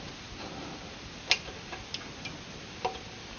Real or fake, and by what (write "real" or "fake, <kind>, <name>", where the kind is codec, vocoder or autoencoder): real